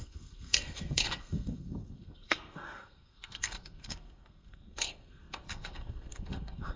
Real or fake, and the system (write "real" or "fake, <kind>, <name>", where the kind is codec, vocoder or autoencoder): fake, codec, SNAC